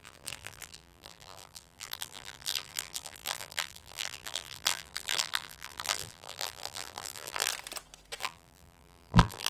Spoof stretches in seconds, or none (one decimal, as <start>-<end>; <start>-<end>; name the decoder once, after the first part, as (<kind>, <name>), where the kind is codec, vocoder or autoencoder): 0.0-7.5 (vocoder, BigVGAN v2); 8.2-9.5